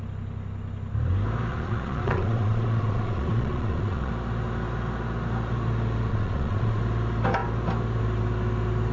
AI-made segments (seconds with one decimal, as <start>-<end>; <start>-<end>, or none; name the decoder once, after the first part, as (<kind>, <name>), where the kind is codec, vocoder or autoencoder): 1.5-4.1 (vocoder, Vocos); 6.1-6.8